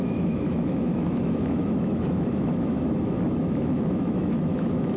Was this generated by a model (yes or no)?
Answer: yes